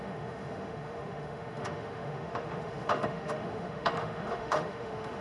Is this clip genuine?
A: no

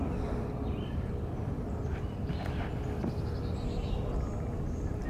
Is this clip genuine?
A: yes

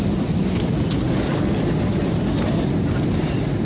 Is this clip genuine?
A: yes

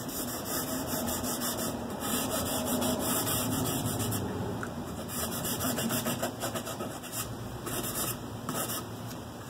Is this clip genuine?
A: no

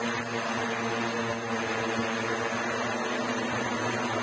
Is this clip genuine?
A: yes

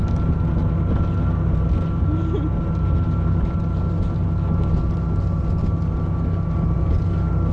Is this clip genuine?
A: yes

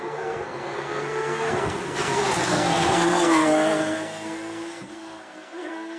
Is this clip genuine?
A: no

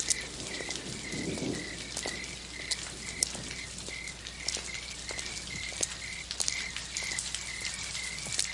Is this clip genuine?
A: yes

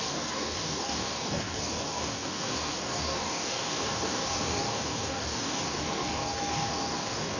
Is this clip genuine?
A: no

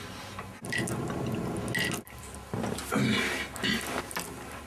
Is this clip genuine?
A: yes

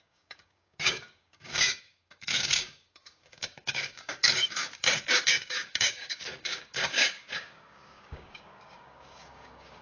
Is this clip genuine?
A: no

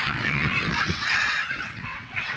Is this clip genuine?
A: no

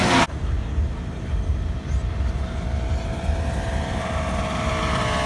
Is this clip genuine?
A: yes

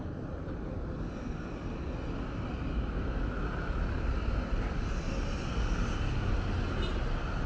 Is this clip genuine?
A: yes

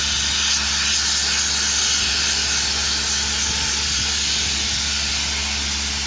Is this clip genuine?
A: yes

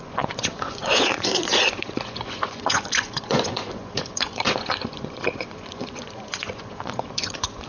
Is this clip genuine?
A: no